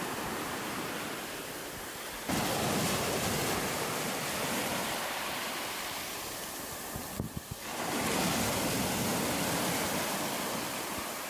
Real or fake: fake